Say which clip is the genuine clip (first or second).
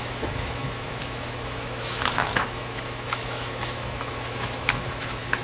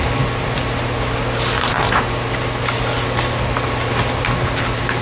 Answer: second